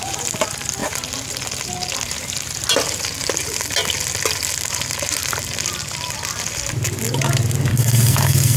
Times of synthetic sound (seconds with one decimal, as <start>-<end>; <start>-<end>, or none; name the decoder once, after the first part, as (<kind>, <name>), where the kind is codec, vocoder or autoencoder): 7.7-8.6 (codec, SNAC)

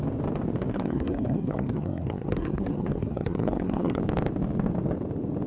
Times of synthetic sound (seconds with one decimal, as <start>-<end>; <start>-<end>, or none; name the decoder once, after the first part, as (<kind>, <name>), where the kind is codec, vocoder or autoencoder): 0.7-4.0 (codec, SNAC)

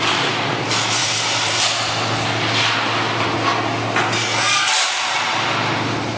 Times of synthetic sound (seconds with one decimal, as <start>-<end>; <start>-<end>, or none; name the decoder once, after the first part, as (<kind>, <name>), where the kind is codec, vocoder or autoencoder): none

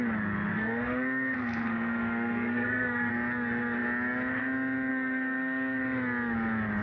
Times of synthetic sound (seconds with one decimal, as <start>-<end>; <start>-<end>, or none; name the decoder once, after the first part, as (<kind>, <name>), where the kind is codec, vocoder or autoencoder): 0.5-3.1 (codec, SNAC); 4.9-5.8